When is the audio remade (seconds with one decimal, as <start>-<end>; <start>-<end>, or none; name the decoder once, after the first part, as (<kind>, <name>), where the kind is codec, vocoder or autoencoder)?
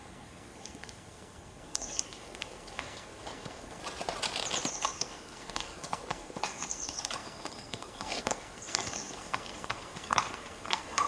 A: 0.0-3.8 (codec, SNAC); 4.7-11.1